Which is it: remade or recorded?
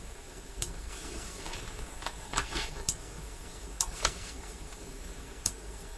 remade